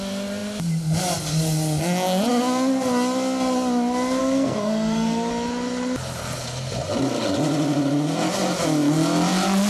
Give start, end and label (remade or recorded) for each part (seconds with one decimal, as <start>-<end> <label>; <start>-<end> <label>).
0.0-4.2 recorded; 4.2-5.3 remade; 5.3-9.7 recorded